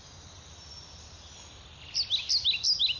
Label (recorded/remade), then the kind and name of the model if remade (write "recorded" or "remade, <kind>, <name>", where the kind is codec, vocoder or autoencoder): recorded